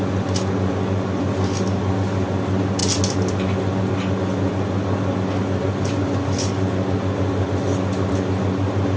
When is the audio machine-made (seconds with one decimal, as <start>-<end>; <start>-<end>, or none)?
none

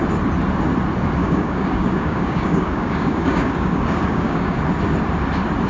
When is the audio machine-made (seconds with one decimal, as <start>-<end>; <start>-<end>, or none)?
1.2-4.6